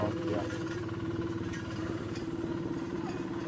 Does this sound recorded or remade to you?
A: remade